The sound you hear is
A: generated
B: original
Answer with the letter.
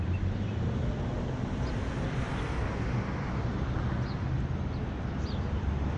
B